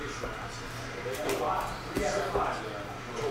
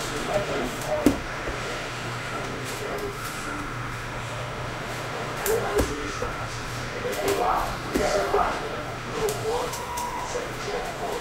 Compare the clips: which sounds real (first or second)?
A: first